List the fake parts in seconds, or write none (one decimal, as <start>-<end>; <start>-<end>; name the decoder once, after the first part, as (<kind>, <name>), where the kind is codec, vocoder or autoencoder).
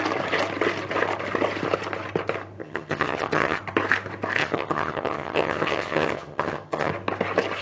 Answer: 2.6-3.6 (vocoder, HiFi-GAN); 4.4-6.9